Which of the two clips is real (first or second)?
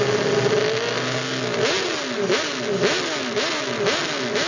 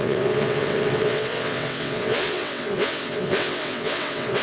first